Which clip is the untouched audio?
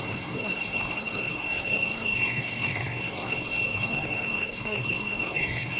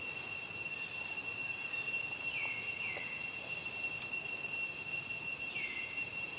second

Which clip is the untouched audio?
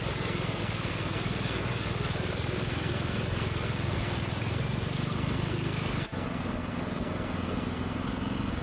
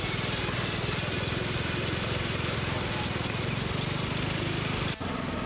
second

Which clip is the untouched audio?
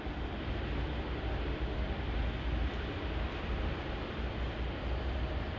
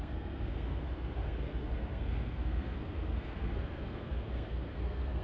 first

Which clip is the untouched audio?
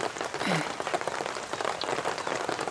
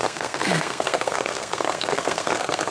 first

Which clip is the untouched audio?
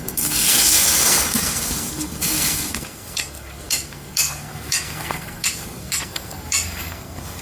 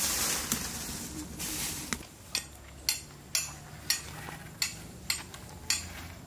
second